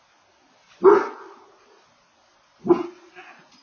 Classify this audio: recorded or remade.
recorded